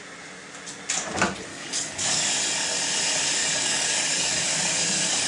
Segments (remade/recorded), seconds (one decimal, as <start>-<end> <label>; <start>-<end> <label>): 0.0-1.5 recorded; 1.5-2.3 remade; 2.3-3.4 recorded; 3.4-5.3 remade